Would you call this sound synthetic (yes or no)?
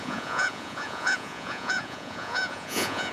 yes